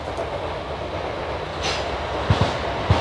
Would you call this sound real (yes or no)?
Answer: yes